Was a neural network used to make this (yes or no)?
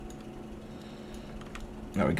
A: no